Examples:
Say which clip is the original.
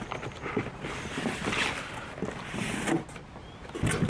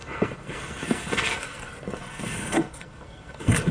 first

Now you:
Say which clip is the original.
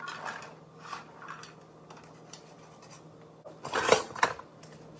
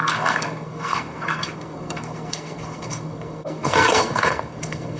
first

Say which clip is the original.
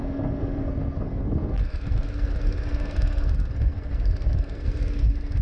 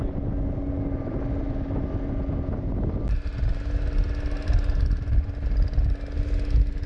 second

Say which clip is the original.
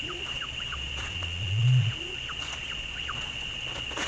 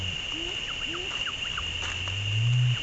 second